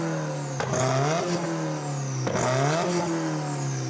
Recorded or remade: recorded